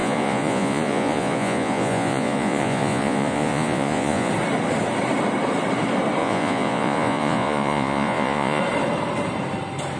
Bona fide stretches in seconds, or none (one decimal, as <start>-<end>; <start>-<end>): 4.3-6.2; 8.6-10.0